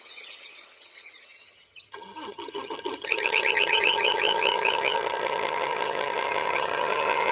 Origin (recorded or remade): remade